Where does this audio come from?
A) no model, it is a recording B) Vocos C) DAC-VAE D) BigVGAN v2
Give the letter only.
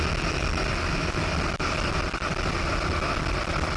A